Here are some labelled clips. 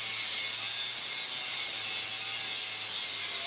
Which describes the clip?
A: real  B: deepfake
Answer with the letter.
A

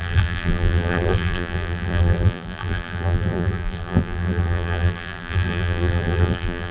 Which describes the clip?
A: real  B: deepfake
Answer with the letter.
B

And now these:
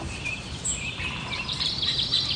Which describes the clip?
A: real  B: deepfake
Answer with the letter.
B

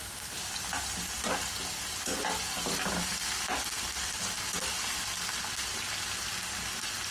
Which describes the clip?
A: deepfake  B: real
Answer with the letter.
B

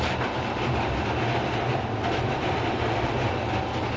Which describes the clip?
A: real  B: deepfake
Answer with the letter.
A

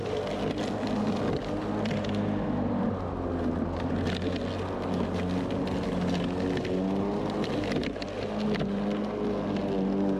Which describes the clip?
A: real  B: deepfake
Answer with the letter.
A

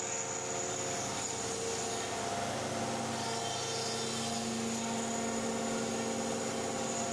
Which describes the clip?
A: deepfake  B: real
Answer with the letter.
B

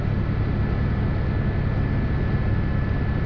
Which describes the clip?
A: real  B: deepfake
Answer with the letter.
A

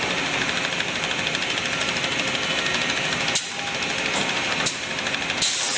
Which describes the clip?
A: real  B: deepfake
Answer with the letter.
A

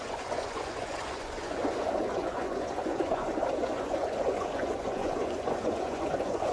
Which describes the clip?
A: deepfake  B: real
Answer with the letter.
A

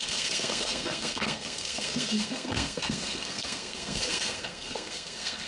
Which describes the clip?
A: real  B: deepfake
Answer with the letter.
B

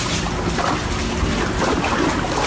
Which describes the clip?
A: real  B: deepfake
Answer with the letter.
A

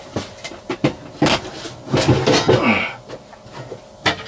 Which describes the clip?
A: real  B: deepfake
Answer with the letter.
A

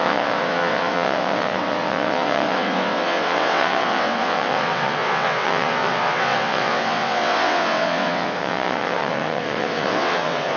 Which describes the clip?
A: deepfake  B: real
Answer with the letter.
A